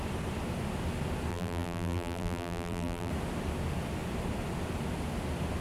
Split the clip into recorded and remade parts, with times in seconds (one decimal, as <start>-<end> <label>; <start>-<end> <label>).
0.0-1.3 recorded; 1.3-3.1 remade; 3.1-5.6 recorded